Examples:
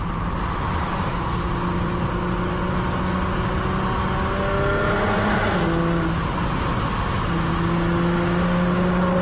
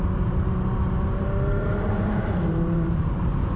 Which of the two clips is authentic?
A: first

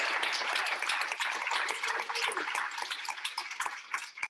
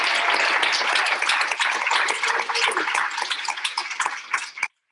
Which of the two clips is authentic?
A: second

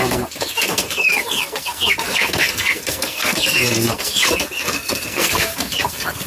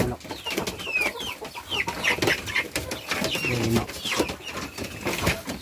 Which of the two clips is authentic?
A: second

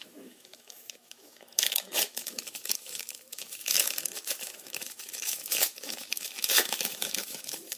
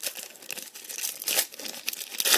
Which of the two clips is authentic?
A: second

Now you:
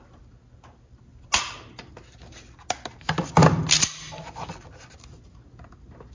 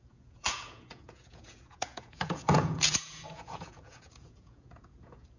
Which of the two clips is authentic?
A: first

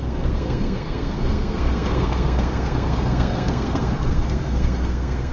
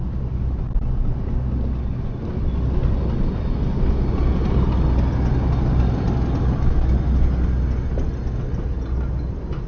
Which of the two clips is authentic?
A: second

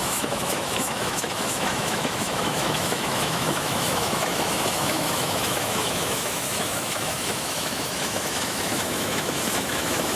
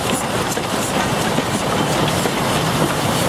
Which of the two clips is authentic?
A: second